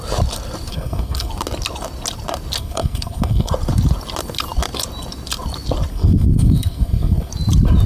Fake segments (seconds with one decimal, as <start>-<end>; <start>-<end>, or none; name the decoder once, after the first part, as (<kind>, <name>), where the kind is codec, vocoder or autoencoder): 0.7-1.3 (codec, SNAC); 2.6-3.5; 5.9-7.3